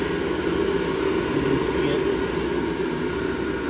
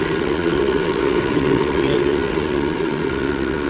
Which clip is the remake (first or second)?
second